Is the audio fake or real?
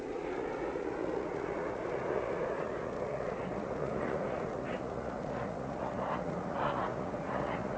fake